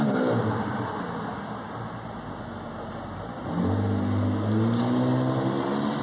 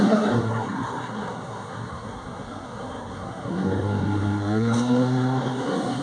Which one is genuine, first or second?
first